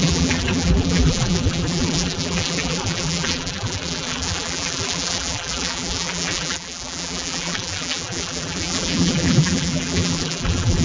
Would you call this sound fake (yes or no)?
yes